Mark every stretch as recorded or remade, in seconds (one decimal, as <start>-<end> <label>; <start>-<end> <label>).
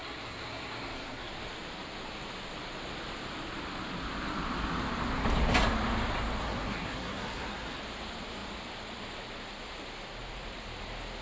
0.0-1.3 remade; 1.3-6.4 recorded; 6.4-7.8 remade; 7.8-11.2 recorded